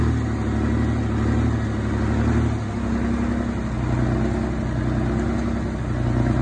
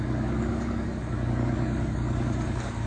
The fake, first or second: second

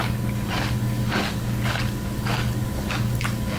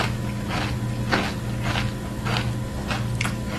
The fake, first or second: first